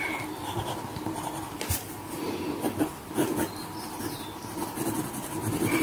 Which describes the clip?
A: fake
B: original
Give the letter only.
A